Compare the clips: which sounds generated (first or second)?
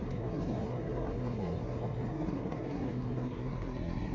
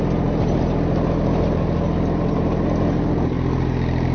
first